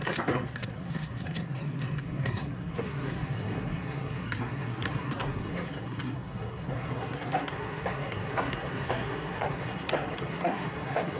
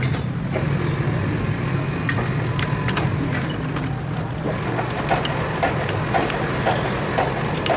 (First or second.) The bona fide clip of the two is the second